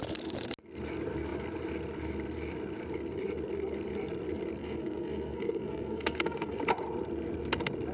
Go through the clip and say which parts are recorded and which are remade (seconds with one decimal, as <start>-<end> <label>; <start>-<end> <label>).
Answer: 0.0-4.6 recorded; 4.6-6.6 remade; 6.6-7.9 recorded